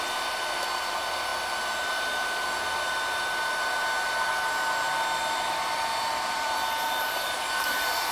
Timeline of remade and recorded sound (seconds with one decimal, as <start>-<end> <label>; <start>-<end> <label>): 0.0-1.3 remade; 1.3-5.5 recorded; 5.5-8.1 remade